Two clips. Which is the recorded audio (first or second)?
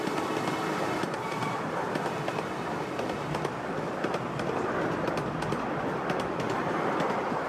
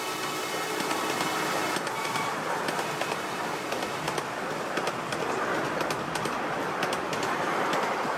second